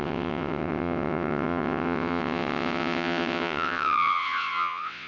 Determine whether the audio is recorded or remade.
remade